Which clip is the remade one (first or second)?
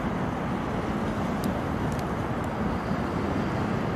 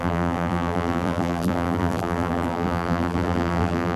second